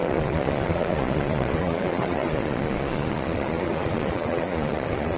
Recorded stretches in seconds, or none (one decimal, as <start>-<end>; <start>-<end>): none